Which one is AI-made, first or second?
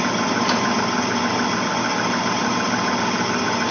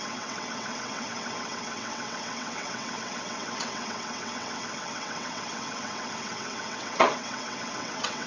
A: second